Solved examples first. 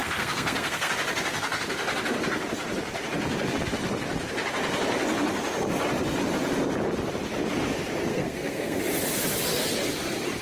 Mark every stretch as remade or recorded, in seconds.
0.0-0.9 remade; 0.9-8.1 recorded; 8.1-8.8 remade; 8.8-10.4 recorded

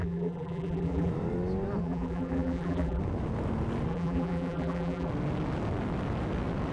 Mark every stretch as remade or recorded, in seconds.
0.0-1.1 remade; 1.1-1.8 recorded; 1.8-3.0 remade; 3.0-3.9 recorded; 3.9-5.1 remade; 5.1-6.7 recorded

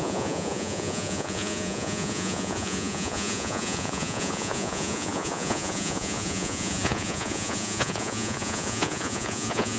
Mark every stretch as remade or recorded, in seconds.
0.0-9.8 remade

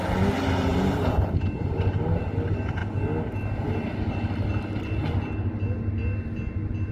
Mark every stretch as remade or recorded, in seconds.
0.0-0.7 recorded; 0.7-1.3 remade; 1.3-6.9 recorded

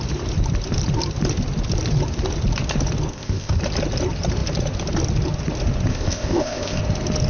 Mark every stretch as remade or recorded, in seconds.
0.0-3.1 recorded; 3.1-3.6 remade; 3.6-5.9 recorded; 5.9-6.8 remade; 6.8-7.3 recorded

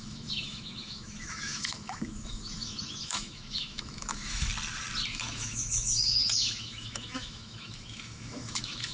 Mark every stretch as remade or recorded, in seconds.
0.0-4.5 remade; 4.5-5.1 recorded; 5.1-8.9 remade

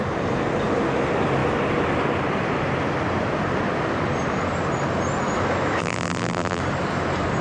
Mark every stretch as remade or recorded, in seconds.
0.0-5.8 recorded; 5.8-6.6 remade; 6.6-7.4 recorded

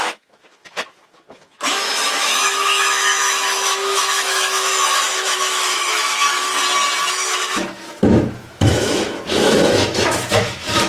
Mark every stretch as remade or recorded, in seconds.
0.0-6.5 remade; 6.5-7.1 recorded; 7.1-10.9 remade